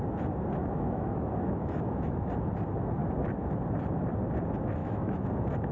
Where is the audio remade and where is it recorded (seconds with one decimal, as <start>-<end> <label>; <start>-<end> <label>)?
0.0-0.6 recorded; 0.6-2.3 remade; 2.3-4.8 recorded; 4.8-5.3 remade; 5.3-5.7 recorded